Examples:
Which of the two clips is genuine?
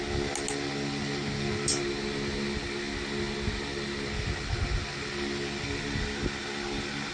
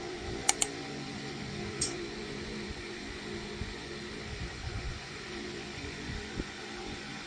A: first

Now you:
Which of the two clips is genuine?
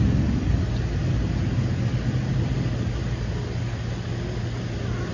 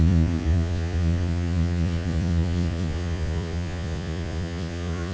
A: first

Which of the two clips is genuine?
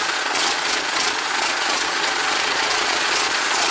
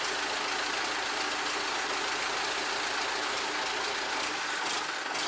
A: second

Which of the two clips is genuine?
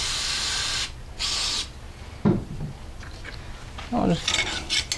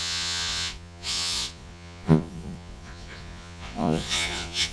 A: first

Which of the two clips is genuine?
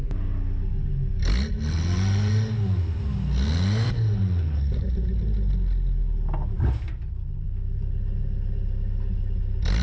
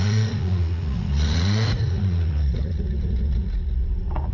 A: first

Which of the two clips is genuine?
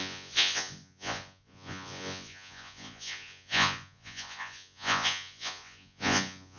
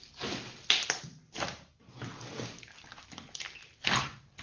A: second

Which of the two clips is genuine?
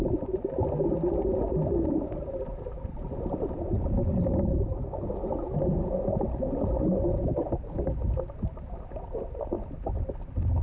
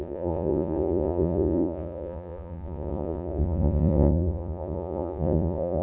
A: first